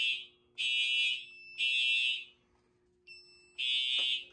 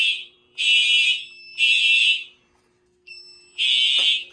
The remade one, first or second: second